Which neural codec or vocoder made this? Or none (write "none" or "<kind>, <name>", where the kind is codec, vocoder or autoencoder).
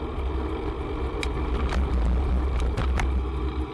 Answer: none